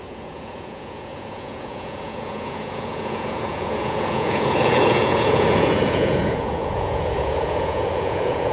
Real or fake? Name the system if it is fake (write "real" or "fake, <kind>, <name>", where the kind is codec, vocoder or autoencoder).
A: fake, vocoder, Vocos